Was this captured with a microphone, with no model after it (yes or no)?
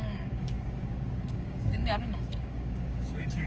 no